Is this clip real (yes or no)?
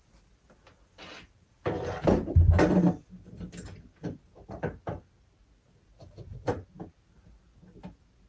yes